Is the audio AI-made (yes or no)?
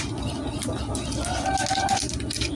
no